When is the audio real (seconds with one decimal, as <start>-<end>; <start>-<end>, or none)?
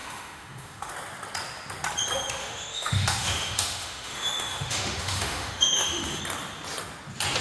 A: 0.9-2.4; 6.2-7.4